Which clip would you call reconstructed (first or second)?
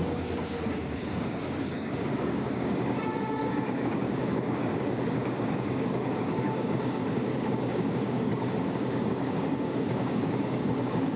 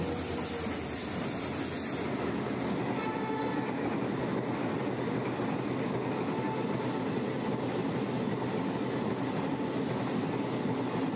first